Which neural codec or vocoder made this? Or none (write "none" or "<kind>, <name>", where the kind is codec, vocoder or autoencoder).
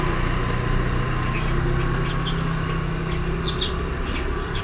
none